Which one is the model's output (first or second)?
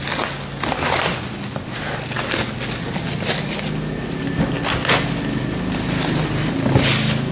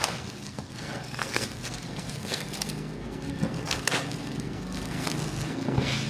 second